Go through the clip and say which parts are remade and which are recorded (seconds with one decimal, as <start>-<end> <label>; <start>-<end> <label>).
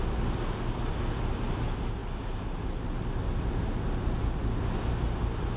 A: 0.0-5.6 recorded